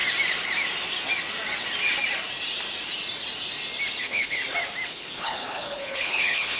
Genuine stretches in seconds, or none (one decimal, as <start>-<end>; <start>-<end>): 0.0-4.0; 4.4-4.9